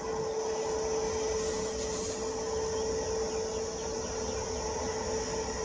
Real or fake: real